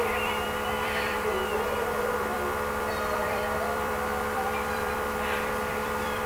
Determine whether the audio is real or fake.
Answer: fake